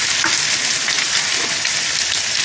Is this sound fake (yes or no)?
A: no